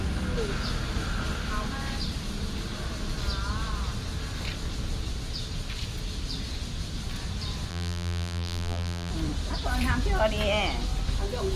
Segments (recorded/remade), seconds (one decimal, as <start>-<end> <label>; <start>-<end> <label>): 0.0-7.7 recorded; 7.7-9.1 remade; 9.1-11.6 recorded